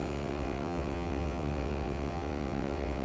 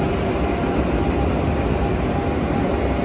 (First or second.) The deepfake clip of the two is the first